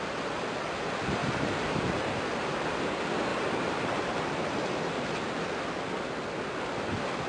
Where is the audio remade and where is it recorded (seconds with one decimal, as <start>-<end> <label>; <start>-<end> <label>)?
0.0-1.2 recorded; 1.2-2.2 remade; 2.2-3.3 recorded; 3.3-5.3 remade; 5.3-7.3 recorded